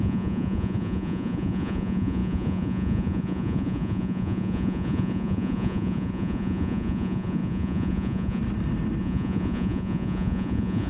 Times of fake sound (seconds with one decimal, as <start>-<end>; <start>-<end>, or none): 0.0-8.4; 9.0-10.9